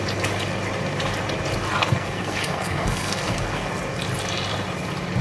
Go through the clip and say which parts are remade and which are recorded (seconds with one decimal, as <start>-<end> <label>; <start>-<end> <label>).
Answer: 0.0-1.8 recorded; 1.8-3.7 remade; 3.7-5.2 recorded